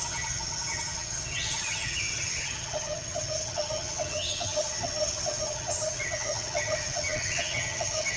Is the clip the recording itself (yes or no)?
no